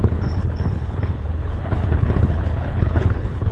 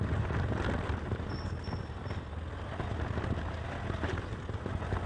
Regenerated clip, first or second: first